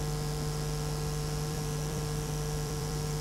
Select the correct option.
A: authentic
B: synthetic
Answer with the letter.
B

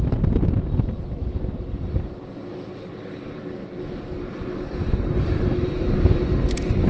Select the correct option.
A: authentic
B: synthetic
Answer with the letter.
A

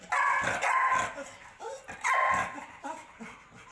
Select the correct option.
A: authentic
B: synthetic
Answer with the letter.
A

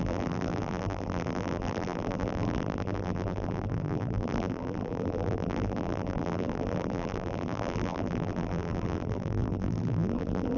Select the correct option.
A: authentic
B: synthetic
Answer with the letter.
B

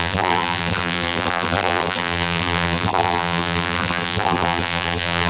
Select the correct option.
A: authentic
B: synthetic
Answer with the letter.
B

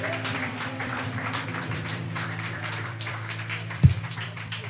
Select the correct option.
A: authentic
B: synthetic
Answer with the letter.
B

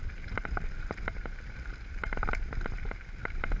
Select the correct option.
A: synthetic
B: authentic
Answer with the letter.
A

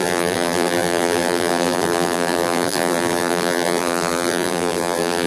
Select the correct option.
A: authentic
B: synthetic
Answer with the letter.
B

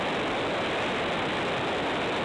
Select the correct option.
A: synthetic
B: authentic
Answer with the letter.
B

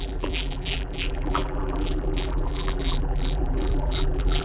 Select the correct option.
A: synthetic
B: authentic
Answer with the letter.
A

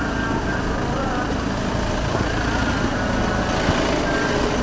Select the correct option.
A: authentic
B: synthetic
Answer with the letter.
A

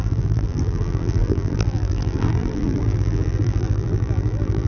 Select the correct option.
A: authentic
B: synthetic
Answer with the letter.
B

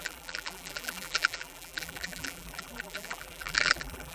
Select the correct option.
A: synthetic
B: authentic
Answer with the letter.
A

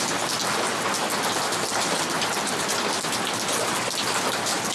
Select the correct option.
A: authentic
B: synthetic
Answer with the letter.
A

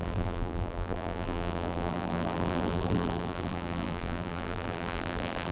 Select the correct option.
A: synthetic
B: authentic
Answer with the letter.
A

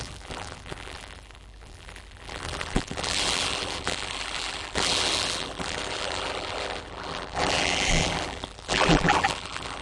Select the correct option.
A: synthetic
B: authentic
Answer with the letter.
A